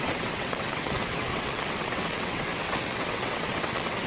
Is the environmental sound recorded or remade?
remade